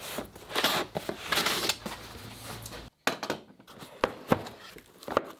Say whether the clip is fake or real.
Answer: real